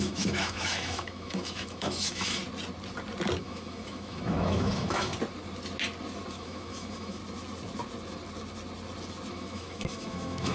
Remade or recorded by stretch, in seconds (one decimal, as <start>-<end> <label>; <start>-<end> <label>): 0.0-2.4 remade; 2.4-3.4 recorded; 3.4-5.1 remade; 5.1-6.3 recorded; 6.3-7.2 remade; 7.2-9.3 recorded; 9.3-10.5 remade